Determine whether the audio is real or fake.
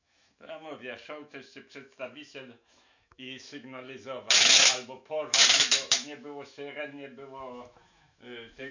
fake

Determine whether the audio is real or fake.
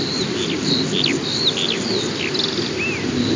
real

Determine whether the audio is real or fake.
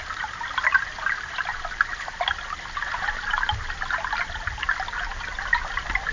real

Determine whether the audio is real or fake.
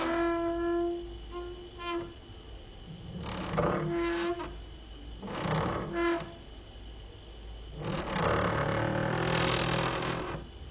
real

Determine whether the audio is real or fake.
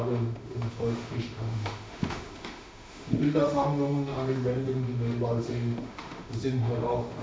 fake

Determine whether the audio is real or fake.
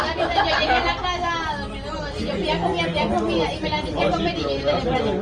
real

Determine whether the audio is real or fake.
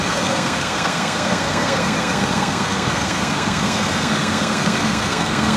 fake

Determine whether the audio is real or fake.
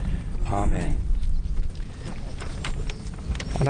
real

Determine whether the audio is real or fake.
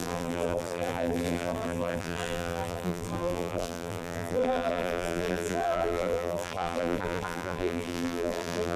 fake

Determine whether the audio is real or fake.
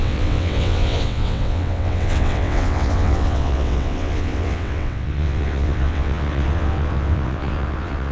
fake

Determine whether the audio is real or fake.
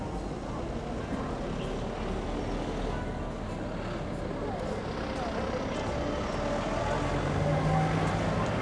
real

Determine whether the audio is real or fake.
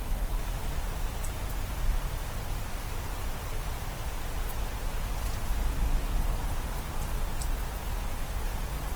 real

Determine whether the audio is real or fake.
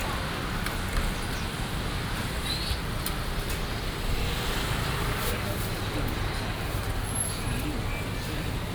real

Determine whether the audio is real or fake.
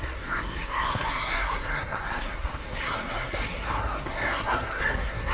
fake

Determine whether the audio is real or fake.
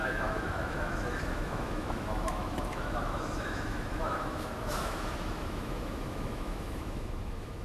fake